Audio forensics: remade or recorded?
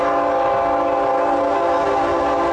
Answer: recorded